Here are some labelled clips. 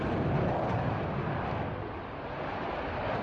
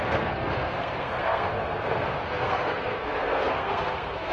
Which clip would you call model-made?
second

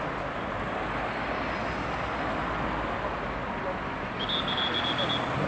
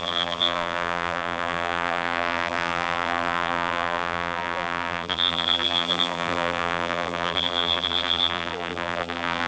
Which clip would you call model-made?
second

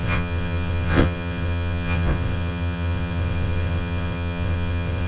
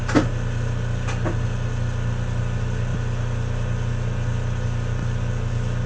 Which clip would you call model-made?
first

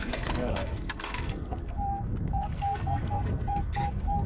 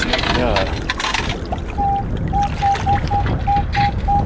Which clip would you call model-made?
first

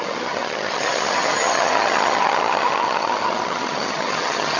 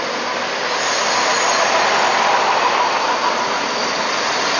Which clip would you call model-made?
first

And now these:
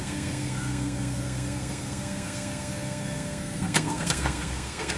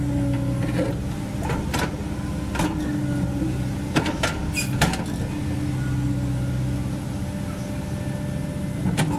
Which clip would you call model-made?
first